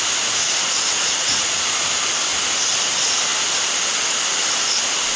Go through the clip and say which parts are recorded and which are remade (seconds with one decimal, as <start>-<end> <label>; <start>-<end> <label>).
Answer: 0.0-0.9 recorded; 0.9-1.9 remade; 1.9-5.2 recorded